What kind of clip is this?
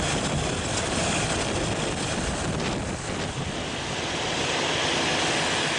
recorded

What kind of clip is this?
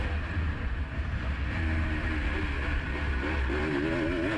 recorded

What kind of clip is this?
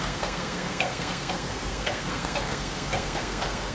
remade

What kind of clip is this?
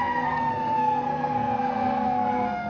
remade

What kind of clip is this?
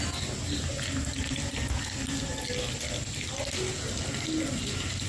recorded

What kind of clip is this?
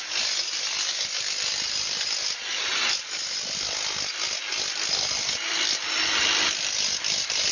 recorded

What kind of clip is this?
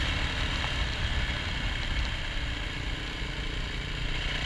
recorded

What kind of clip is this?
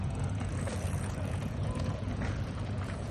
remade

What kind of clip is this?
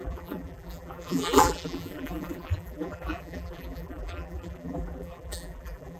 remade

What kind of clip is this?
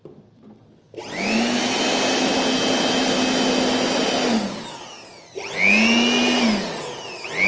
recorded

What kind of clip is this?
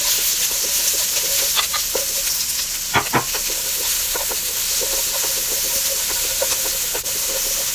recorded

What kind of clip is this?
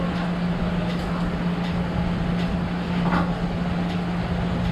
recorded